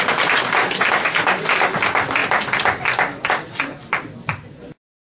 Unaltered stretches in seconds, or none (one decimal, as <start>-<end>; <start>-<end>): 0.0-5.0